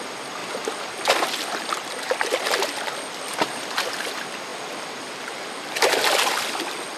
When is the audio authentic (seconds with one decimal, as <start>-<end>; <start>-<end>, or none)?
0.0-0.4; 1.5-4.5; 5.8-7.0